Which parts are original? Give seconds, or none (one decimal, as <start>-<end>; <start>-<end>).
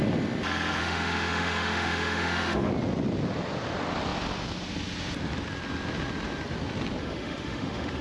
0.0-0.8; 2.7-7.0